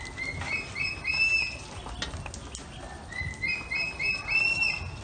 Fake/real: real